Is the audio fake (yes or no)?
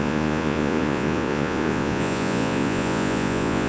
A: yes